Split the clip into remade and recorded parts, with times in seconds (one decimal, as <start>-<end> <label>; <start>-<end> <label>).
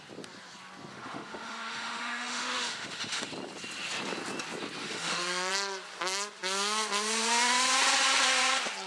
0.0-0.9 recorded; 0.9-3.3 remade; 3.3-4.8 recorded; 4.8-5.5 remade; 5.5-8.9 recorded